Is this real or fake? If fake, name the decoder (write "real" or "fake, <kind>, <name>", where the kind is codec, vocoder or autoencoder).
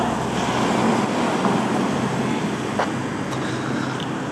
real